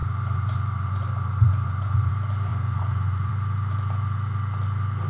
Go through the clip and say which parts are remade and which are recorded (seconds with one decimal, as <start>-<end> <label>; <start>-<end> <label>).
0.0-2.1 remade; 2.1-2.5 recorded; 2.5-3.3 remade; 3.3-5.1 recorded